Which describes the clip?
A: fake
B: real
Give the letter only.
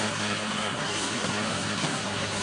A